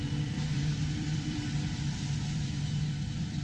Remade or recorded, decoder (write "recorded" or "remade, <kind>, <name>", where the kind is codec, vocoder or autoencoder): remade, vocoder, BigVGAN v2